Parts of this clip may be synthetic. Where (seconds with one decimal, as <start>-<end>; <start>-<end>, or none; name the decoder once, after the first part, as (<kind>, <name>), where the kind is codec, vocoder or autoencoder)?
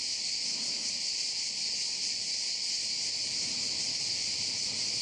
none